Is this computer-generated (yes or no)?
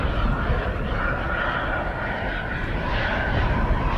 no